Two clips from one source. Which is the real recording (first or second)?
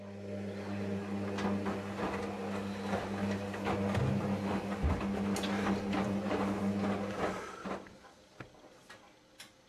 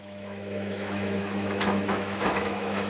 first